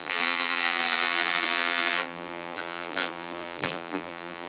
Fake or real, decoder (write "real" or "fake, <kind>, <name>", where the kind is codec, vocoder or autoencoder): fake, vocoder, BigVGAN v2